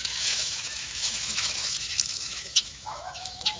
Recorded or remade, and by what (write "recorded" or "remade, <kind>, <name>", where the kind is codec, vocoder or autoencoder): remade, autoencoder, DAC-VAE